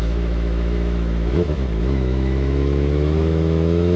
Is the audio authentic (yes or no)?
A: no